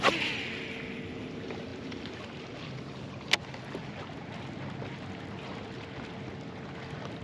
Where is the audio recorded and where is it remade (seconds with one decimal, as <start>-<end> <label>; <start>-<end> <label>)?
0.0-1.7 recorded; 1.7-3.3 remade; 3.3-7.2 recorded